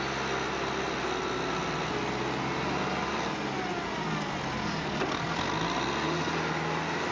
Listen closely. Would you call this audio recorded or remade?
recorded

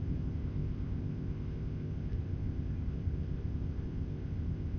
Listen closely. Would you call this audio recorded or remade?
remade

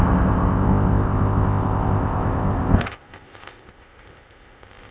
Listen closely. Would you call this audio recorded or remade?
remade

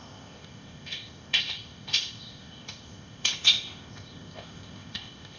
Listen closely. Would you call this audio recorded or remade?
remade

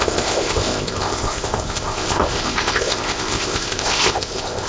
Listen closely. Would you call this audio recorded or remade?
remade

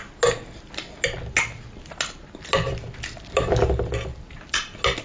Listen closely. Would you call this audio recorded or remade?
recorded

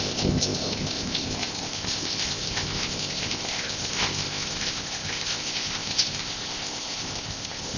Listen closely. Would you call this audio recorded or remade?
remade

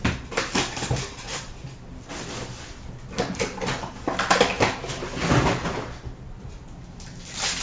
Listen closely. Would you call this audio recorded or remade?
recorded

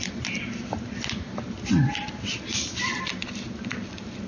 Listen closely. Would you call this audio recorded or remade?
recorded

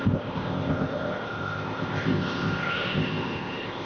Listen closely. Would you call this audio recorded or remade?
remade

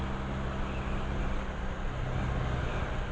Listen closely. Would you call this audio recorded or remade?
recorded